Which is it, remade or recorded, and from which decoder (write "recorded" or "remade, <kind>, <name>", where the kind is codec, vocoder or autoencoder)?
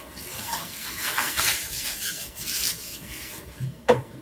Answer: remade, codec, SNAC